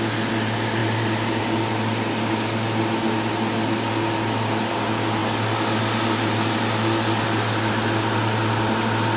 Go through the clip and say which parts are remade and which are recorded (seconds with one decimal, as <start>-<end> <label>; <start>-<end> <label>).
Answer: 0.0-9.2 recorded